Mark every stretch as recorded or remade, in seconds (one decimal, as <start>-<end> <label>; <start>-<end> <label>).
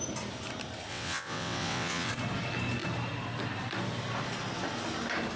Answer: 0.0-0.9 recorded; 0.9-2.1 remade; 2.1-5.4 recorded